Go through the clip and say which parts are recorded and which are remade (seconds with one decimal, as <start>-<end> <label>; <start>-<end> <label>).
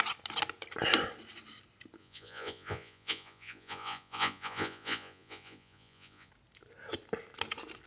0.0-2.0 recorded; 2.0-6.3 remade; 6.3-7.9 recorded